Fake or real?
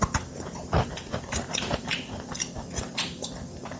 real